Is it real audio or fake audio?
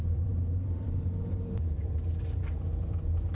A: fake